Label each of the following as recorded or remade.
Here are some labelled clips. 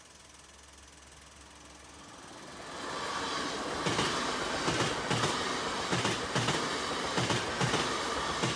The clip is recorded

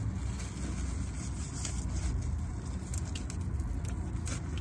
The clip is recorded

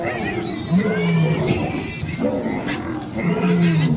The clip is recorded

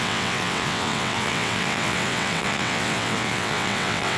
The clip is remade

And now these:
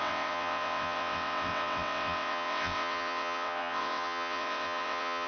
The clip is remade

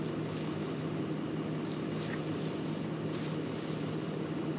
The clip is recorded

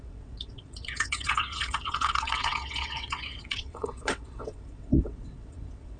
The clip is remade